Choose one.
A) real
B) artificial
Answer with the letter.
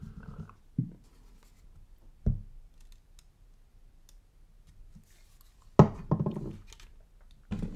A